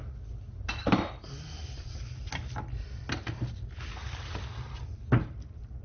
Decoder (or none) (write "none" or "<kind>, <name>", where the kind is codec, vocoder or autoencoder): none